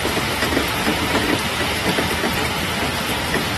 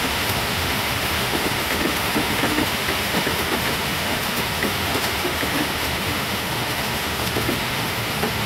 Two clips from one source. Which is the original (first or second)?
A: first